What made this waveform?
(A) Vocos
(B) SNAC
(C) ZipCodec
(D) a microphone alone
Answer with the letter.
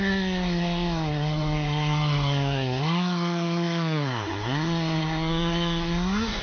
B